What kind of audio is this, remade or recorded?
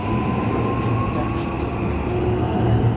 recorded